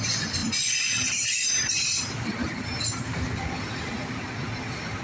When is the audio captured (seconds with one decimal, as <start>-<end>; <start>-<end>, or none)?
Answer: 0.0-5.0